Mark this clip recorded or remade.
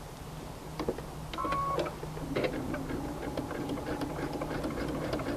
recorded